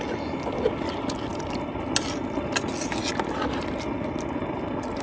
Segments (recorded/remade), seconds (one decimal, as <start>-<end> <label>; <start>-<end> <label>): 0.0-5.0 recorded